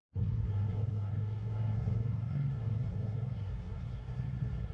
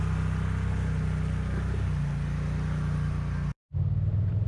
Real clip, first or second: second